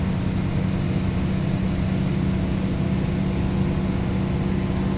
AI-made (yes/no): no